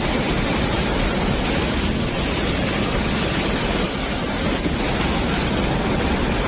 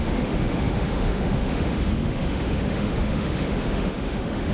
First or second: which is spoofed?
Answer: second